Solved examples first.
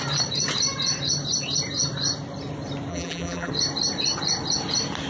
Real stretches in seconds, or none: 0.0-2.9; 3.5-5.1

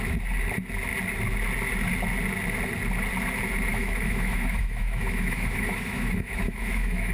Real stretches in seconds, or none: 0.0-3.7

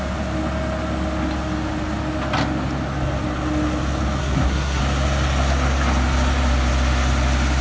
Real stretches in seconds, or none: 0.0-4.2; 4.8-7.6